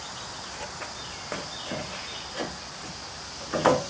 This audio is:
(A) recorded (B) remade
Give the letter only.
A